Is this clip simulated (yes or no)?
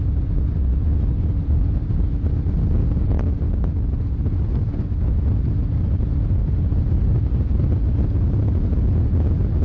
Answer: no